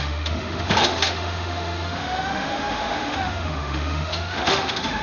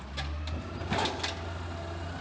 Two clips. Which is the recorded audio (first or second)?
second